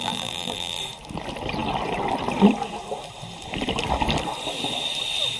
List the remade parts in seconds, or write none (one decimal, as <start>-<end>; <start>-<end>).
0.0-0.8